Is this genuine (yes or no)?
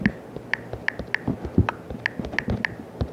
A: yes